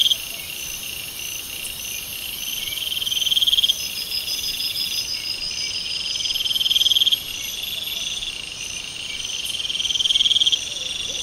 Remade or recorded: recorded